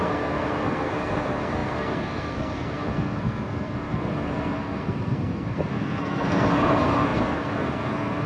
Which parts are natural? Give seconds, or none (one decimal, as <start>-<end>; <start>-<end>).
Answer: none